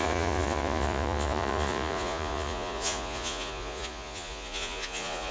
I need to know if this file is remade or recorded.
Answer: remade